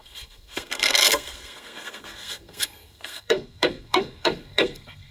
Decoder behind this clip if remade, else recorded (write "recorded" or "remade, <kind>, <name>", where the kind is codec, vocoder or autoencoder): remade, codec, SNAC